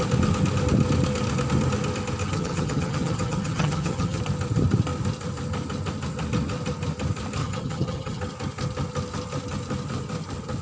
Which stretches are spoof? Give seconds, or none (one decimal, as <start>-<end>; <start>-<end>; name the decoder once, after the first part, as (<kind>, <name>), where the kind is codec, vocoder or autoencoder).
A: 2.2-4.2 (vocoder, HiFi-GAN); 7.4-8.2